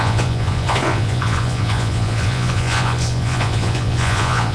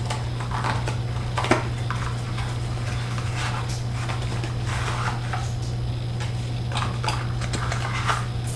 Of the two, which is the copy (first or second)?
first